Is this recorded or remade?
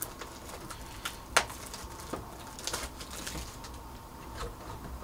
recorded